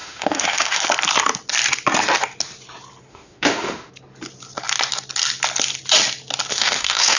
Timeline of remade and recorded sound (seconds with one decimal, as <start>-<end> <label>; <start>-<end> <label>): 0.0-0.8 remade; 0.8-3.1 recorded; 3.1-3.9 remade; 3.9-6.5 recorded; 6.5-7.2 remade